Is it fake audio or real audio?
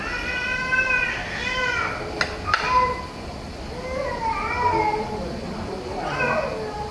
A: real